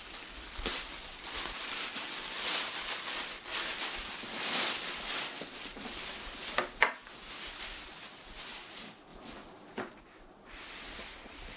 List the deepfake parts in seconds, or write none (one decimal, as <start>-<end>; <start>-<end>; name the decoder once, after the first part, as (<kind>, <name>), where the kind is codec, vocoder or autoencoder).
none